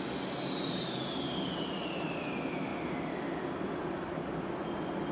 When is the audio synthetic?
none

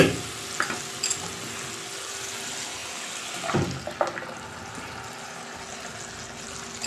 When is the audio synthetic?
2.8-6.0 (vocoder, BigVGAN v2)

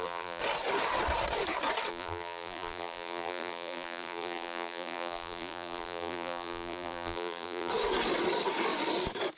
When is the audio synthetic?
0.0-0.4 (vocoder, BigVGAN v2); 1.9-7.7

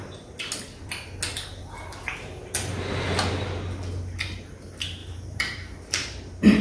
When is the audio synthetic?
5.0-6.6 (vocoder, BigVGAN v2)

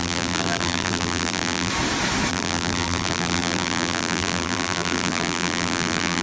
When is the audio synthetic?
0.0-1.7 (vocoder, BigVGAN v2); 2.3-6.2

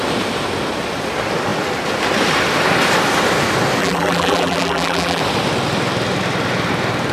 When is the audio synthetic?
3.8-5.2 (vocoder, BigVGAN v2)

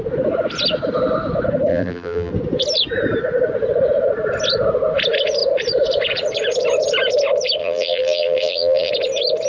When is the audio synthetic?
1.7-2.3 (vocoder, BigVGAN v2); 7.6-8.9